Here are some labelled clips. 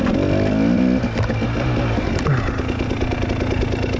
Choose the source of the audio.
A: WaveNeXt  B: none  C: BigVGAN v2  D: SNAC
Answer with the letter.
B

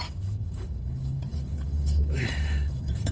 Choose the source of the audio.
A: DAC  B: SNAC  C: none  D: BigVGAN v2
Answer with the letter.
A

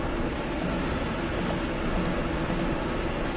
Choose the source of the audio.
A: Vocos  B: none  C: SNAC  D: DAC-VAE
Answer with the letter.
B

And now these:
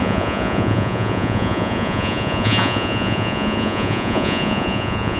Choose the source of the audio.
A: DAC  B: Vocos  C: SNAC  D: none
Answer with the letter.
B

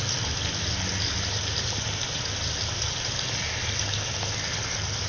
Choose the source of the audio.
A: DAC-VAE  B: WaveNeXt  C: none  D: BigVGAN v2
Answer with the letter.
C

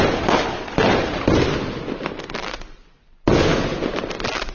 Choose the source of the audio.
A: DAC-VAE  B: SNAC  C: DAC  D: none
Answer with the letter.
D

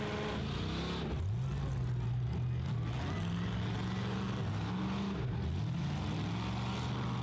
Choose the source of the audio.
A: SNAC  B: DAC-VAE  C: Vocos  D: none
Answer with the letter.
D